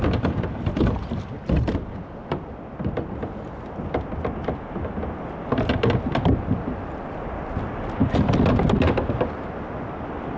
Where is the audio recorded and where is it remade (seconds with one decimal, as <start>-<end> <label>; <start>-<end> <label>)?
0.0-10.4 recorded